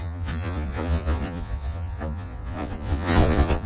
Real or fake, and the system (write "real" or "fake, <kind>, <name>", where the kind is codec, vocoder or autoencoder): fake, vocoder, Vocos